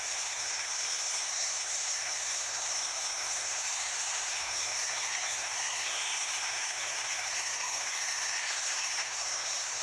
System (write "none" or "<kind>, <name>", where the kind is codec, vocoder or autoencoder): codec, SNAC